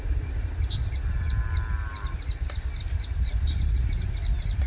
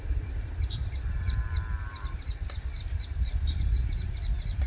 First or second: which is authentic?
first